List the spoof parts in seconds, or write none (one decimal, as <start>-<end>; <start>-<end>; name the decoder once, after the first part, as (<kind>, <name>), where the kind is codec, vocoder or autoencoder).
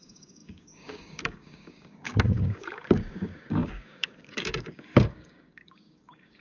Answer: 0.0-6.4 (codec, DAC)